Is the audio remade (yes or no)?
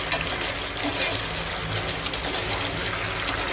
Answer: no